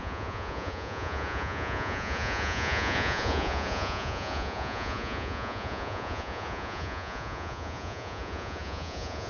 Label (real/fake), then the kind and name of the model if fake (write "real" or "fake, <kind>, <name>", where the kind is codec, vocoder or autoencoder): fake, vocoder, Vocos